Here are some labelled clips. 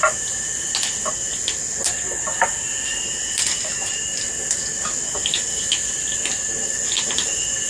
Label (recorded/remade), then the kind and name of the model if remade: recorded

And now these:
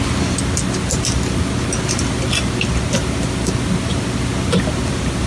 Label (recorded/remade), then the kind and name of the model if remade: recorded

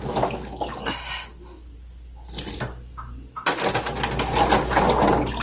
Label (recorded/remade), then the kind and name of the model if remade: recorded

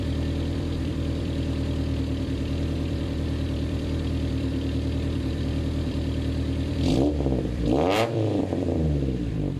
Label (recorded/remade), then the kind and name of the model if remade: remade, vocoder, BigVGAN v2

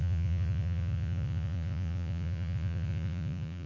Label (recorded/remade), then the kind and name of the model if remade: remade, vocoder, Vocos